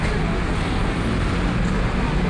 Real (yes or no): yes